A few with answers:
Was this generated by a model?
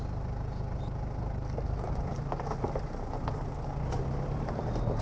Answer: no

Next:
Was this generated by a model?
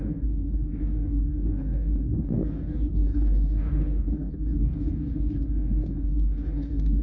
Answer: yes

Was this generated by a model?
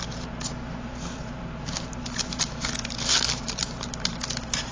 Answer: no